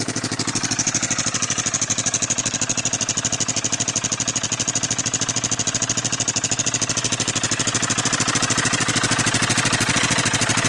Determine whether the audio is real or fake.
real